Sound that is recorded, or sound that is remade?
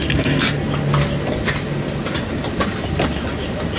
recorded